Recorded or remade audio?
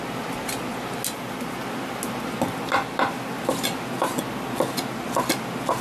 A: recorded